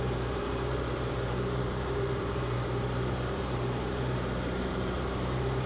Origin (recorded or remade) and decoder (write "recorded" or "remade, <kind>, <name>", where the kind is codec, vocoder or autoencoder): remade, vocoder, BigVGAN v2